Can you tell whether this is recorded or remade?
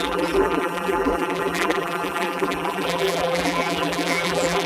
remade